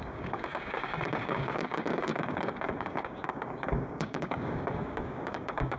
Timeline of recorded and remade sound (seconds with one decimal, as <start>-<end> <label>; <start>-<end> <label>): 0.0-5.8 remade